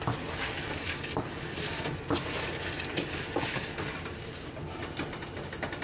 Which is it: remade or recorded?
recorded